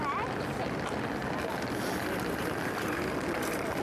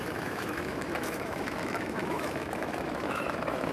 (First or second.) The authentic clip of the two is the first